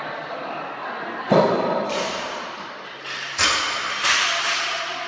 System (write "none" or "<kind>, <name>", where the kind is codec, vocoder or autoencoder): none